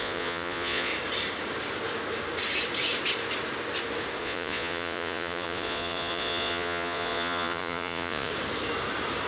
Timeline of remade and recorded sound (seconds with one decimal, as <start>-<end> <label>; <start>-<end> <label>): 0.0-0.9 remade; 0.9-4.2 recorded; 4.2-8.3 remade; 8.3-9.3 recorded